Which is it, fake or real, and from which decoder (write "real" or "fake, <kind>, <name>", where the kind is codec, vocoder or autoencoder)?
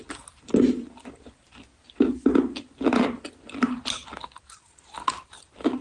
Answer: real